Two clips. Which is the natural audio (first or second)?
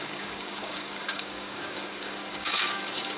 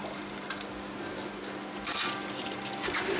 second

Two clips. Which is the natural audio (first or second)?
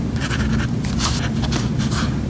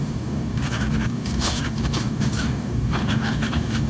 first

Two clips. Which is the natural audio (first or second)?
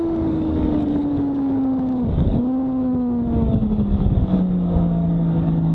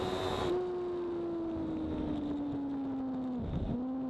second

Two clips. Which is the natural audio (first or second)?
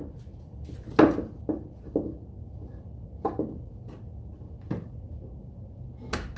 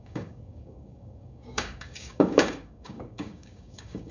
first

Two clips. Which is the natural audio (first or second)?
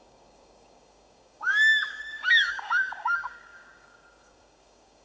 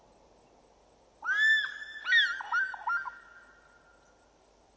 second